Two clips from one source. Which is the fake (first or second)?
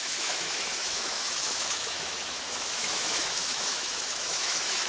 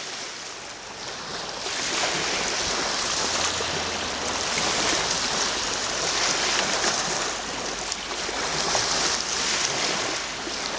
first